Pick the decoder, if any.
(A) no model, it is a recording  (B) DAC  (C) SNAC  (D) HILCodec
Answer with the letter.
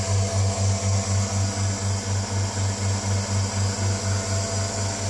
A